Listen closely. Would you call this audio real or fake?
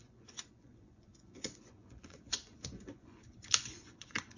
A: fake